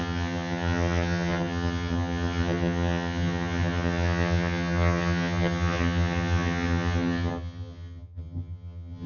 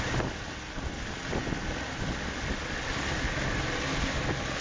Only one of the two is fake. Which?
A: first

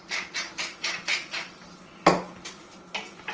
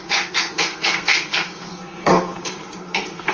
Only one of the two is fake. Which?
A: second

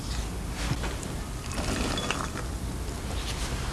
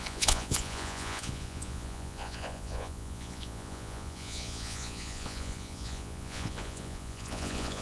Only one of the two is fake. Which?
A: second